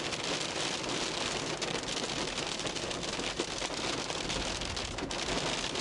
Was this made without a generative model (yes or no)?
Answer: yes